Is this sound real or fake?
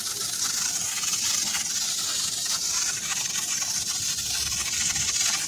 real